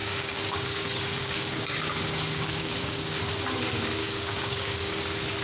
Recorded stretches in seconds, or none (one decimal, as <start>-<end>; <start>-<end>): 3.2-4.0; 5.0-5.4